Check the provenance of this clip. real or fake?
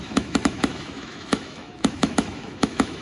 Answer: fake